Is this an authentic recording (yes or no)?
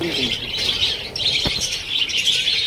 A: yes